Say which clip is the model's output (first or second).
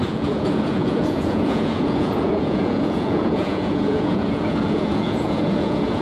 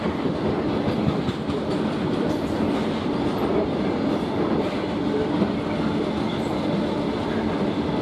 first